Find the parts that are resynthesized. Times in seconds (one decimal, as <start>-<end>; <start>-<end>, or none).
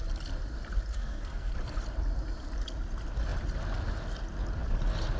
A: 0.9-1.5